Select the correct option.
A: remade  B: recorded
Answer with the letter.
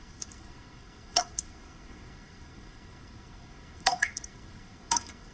A